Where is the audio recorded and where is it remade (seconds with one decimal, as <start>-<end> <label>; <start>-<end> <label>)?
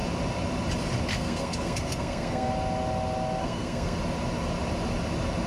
0.0-1.1 recorded; 1.1-2.5 remade; 2.5-3.4 recorded; 3.4-4.0 remade; 4.0-5.5 recorded